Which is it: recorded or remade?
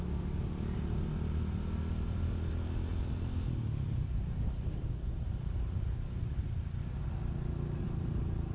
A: recorded